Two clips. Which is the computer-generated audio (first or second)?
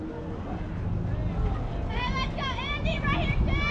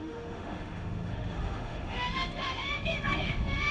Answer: second